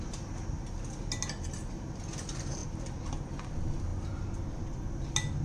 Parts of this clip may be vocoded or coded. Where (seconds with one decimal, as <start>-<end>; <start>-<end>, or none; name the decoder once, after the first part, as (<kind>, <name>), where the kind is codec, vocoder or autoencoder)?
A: none